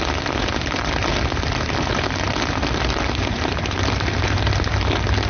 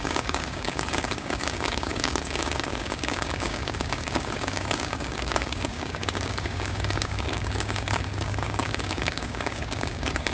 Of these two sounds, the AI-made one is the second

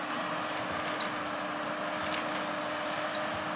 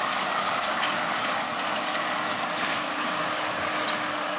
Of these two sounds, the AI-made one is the second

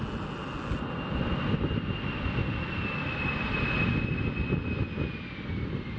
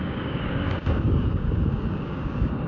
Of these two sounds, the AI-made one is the second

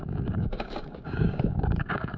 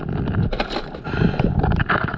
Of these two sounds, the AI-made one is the first